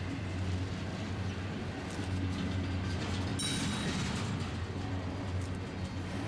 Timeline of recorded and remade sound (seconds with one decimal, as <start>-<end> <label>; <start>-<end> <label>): 0.0-6.3 recorded